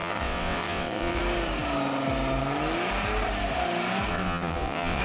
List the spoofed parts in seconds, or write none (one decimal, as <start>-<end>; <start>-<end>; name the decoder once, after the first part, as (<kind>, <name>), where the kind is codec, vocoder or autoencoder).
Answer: 0.0-1.2 (vocoder, WaveNeXt); 4.1-5.0